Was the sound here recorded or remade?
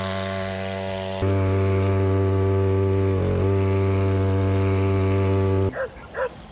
recorded